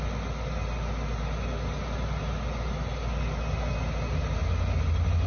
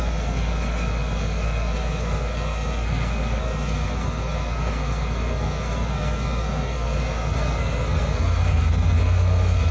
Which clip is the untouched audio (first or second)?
first